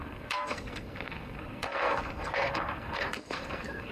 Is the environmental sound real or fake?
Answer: fake